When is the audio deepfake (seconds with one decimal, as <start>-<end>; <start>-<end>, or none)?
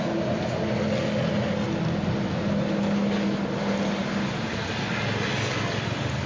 none